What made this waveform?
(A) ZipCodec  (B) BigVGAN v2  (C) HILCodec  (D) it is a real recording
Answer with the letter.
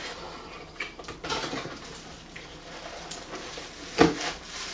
D